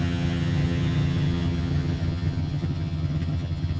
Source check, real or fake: fake